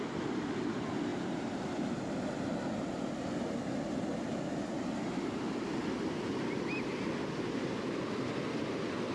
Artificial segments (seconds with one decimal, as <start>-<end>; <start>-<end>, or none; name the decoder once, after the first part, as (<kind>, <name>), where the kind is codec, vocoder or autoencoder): none